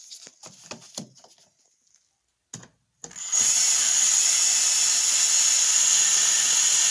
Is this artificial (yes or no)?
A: no